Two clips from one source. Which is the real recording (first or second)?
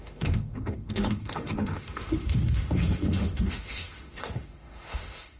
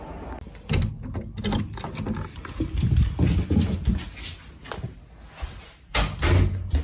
second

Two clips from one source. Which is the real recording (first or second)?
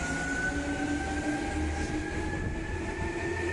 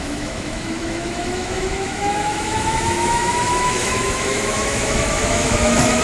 first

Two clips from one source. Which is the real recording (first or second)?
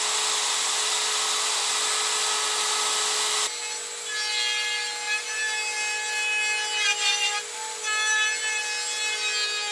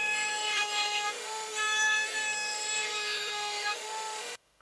first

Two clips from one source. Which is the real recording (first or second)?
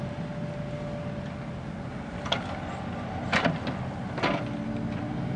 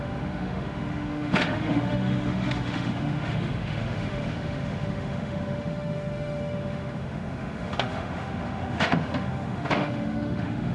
first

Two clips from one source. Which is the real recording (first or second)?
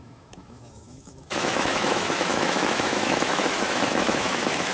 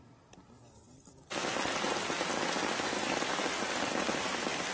second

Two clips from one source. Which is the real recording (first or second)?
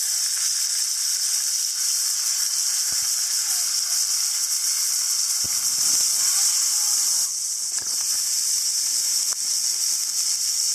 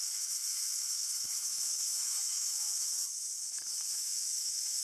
first